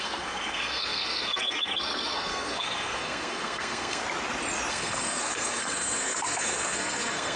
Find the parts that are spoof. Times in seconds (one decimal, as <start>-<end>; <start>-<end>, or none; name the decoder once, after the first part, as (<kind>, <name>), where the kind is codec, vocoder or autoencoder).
0.0-4.0 (codec, SNAC); 4.7-7.4